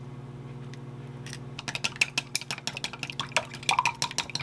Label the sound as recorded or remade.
recorded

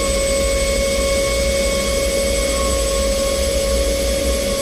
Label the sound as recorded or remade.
recorded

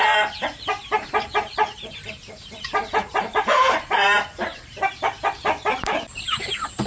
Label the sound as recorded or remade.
remade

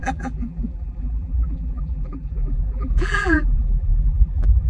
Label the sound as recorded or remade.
remade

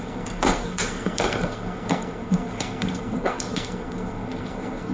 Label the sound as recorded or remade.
remade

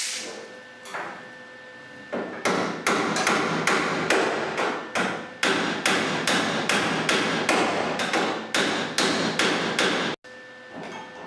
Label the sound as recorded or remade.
recorded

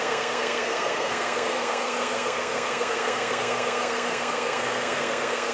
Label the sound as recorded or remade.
remade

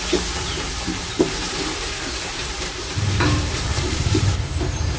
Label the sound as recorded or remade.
remade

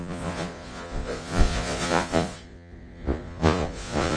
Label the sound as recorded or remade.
remade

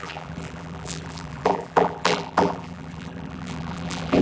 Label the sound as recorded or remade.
remade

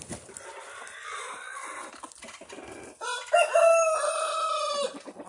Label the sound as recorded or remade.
recorded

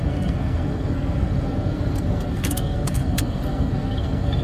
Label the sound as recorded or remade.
remade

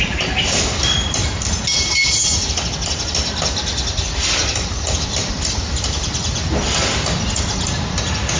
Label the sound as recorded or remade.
recorded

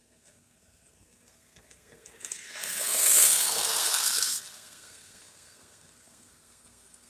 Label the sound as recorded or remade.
remade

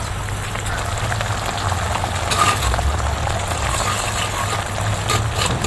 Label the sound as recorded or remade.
recorded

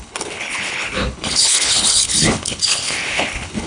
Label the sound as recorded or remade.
remade